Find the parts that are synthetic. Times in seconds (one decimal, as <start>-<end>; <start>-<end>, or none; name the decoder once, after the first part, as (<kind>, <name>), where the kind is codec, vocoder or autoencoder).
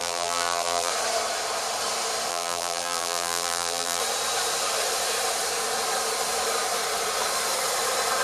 0.0-0.9 (vocoder, BigVGAN v2); 2.3-4.0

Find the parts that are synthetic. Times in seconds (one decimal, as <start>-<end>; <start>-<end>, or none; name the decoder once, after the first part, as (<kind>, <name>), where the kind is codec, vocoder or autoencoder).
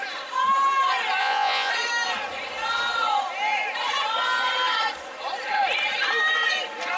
1.2-1.7 (vocoder, Vocos)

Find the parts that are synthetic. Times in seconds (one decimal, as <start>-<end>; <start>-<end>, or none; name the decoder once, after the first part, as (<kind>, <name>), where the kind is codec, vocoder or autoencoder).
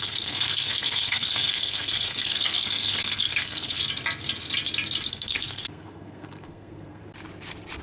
0.0-3.8 (codec, SNAC); 5.1-7.0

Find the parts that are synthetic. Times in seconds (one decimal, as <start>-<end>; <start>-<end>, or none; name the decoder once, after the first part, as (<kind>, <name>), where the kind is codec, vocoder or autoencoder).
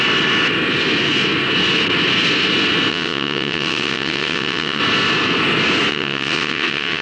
2.9-4.8 (vocoder, WaveNeXt); 5.9-7.0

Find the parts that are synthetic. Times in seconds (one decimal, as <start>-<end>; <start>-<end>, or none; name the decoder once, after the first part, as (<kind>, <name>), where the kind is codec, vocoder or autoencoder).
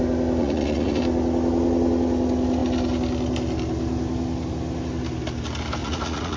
0.4-1.0 (vocoder, Vocos); 5.8-6.4